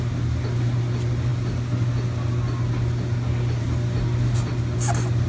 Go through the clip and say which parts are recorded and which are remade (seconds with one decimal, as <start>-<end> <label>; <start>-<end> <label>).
0.0-5.3 recorded